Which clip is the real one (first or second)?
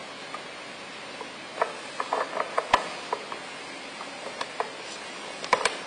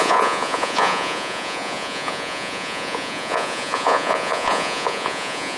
first